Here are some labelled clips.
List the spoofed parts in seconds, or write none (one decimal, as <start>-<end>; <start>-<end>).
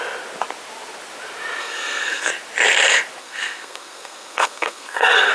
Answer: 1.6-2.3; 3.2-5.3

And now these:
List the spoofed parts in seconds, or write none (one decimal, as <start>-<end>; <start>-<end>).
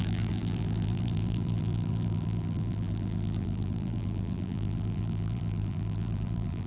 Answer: 0.0-6.7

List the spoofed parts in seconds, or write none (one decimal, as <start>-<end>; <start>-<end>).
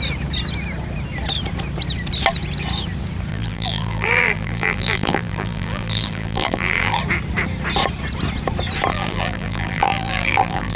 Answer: 3.3-7.0; 8.9-10.8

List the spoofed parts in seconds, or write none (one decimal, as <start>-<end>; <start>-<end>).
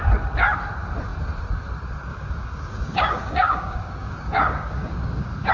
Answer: 2.1-5.5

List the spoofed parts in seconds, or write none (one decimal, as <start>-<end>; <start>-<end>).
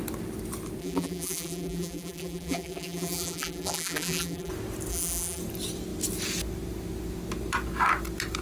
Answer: 0.8-4.5; 4.9-5.4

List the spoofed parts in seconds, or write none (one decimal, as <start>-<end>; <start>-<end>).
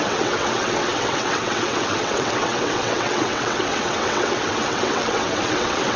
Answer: 0.0-6.0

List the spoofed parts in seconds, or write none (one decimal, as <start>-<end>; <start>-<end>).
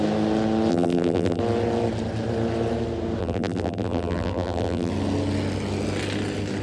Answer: 0.7-1.4; 3.2-4.9